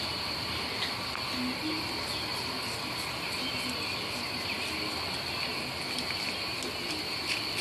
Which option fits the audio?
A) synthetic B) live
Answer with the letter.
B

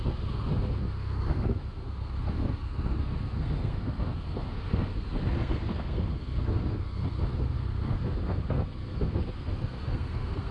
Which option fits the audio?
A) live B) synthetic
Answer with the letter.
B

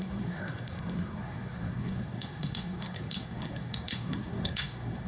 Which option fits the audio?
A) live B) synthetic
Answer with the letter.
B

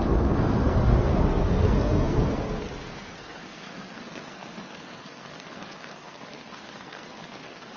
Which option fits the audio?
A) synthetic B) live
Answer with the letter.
A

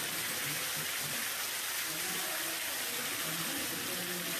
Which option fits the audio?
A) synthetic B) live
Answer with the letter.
B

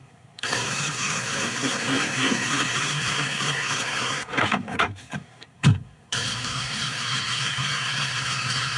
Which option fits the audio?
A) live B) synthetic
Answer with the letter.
B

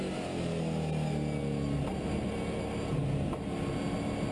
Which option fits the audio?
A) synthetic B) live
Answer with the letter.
B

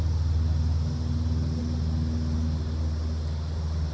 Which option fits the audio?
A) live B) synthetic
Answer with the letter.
A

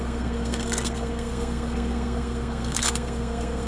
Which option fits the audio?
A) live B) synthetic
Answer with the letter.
B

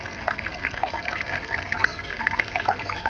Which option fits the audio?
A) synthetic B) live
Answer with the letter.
A